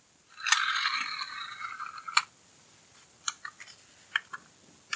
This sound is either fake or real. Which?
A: real